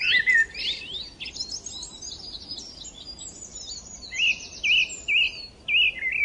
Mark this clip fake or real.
real